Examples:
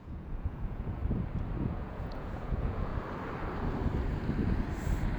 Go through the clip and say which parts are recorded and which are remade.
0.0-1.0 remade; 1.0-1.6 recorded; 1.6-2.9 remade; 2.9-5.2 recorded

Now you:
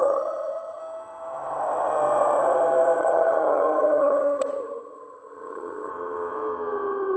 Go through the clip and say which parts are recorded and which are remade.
0.0-0.8 remade; 0.8-3.0 recorded; 3.0-5.9 remade; 5.9-7.2 recorded

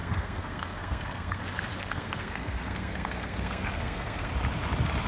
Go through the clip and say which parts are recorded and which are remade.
0.0-1.4 remade; 1.4-1.8 recorded; 1.8-4.3 remade; 4.3-5.1 recorded

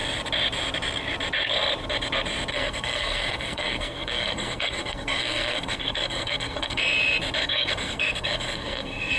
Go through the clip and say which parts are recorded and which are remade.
0.0-2.5 recorded; 2.5-6.8 remade; 6.8-7.4 recorded; 7.4-9.2 remade

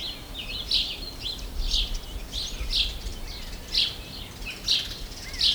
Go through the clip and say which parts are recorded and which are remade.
0.0-5.5 recorded

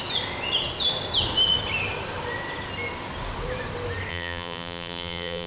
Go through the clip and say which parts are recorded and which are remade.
0.0-4.1 recorded; 4.1-5.5 remade